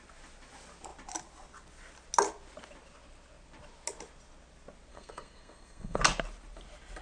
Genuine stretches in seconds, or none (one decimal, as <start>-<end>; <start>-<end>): 0.0-4.9; 6.0-7.0